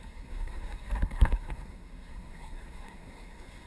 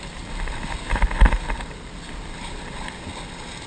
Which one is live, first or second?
second